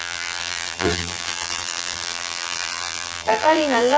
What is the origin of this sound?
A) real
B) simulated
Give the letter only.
B